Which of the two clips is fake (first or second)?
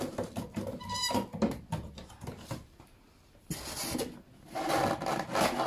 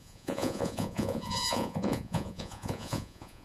second